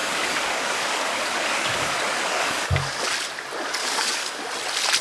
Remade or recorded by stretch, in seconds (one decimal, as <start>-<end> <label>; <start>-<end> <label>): 0.0-3.0 remade; 3.0-3.8 recorded; 3.8-4.4 remade; 4.4-5.0 recorded